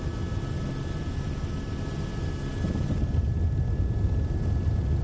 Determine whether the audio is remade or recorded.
recorded